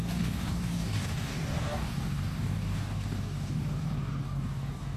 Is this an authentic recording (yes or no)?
no